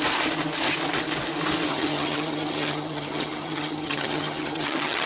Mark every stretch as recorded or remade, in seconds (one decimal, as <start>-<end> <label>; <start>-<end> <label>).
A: 0.0-1.7 recorded; 1.7-5.1 remade